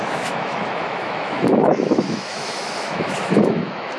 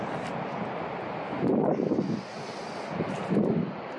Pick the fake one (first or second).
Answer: first